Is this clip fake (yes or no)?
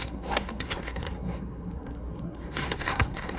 yes